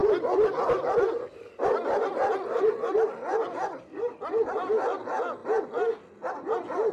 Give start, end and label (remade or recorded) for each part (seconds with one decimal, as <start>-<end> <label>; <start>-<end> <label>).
0.0-6.9 recorded